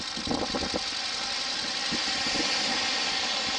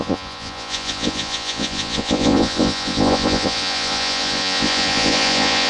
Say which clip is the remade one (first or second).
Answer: second